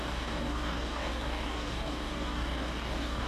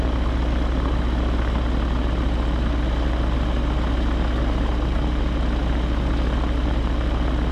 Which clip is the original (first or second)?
second